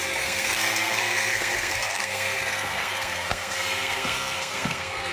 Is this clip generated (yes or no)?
yes